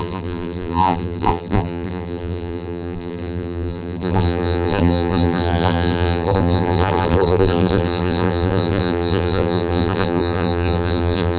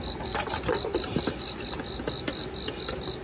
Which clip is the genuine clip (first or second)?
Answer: second